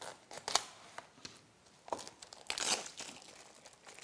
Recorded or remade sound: recorded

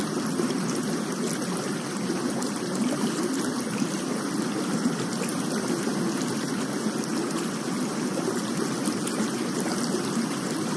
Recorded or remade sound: recorded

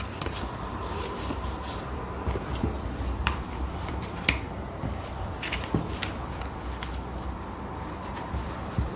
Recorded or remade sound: remade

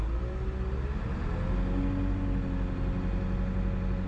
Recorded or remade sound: recorded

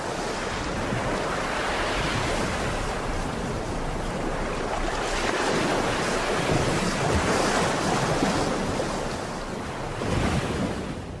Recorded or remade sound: recorded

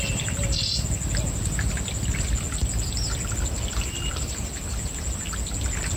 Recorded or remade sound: recorded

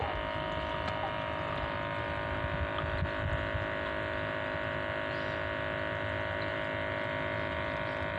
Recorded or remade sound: remade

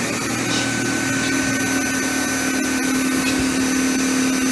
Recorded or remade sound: recorded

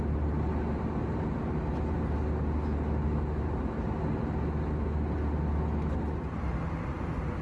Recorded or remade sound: recorded